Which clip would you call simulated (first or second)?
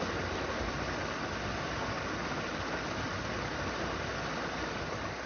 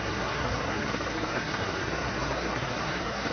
second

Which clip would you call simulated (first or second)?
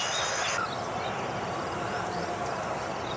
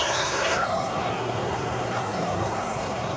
second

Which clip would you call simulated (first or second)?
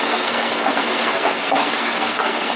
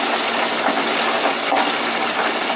first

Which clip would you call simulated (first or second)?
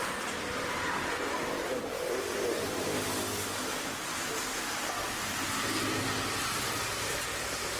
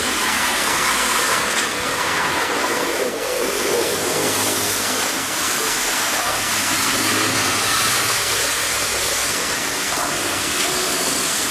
second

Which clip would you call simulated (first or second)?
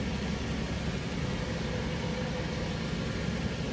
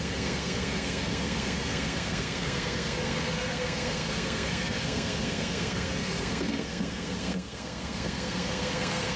second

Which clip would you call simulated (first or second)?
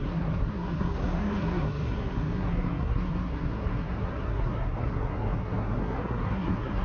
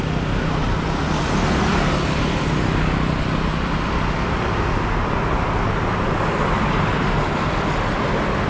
first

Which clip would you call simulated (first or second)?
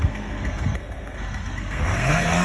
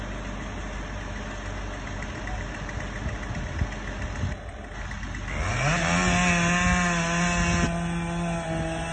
first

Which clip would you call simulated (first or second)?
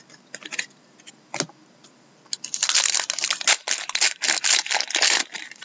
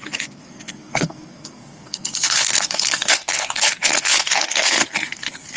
second